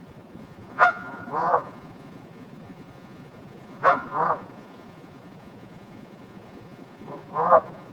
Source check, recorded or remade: remade